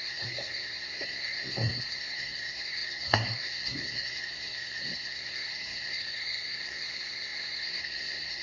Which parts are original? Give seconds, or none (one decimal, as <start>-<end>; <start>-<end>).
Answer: none